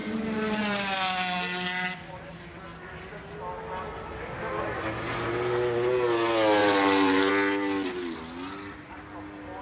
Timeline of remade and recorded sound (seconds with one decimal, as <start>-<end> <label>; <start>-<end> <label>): 0.0-0.6 remade; 0.6-6.6 recorded; 6.6-7.3 remade; 7.3-9.6 recorded